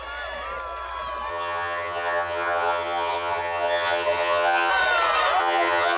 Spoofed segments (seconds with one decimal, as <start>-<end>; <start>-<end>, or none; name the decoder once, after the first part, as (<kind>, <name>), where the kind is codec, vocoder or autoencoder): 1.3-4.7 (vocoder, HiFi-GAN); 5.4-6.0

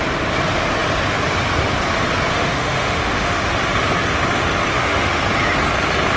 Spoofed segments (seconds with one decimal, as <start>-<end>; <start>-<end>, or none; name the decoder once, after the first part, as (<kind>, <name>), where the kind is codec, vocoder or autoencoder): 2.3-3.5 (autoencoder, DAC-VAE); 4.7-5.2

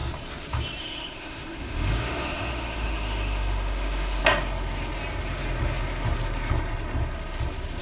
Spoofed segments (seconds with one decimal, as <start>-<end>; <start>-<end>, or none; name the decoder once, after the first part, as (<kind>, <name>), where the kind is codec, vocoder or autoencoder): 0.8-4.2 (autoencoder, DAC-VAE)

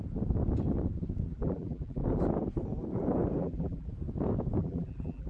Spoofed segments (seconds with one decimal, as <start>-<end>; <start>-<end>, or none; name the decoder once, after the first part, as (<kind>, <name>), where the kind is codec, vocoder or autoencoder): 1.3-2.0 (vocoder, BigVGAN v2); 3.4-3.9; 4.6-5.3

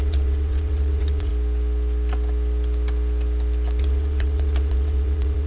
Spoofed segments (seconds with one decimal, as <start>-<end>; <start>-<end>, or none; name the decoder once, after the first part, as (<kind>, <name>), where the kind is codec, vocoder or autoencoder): 0.0-1.3 (vocoder, WaveNeXt); 3.8-5.5